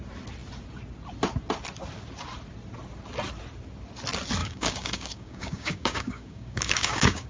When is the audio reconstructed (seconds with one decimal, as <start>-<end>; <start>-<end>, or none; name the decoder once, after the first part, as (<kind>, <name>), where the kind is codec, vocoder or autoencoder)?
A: 4.4-7.3 (codec, DAC)